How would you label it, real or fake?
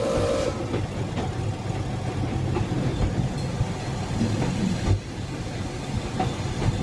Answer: real